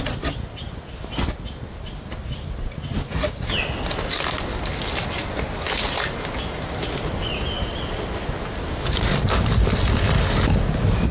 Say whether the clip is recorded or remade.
recorded